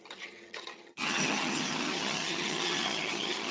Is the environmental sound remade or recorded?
remade